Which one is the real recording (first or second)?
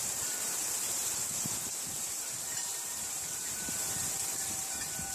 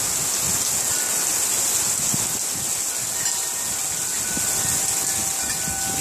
second